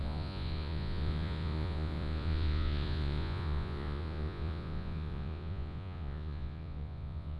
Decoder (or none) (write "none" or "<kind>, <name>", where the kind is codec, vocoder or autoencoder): vocoder, Vocos